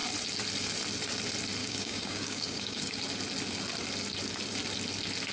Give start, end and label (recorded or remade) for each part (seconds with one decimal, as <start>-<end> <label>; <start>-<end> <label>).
0.0-1.6 recorded; 1.6-3.0 remade; 3.0-5.3 recorded